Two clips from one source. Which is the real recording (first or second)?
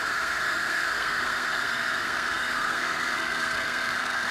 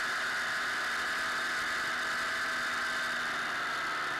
second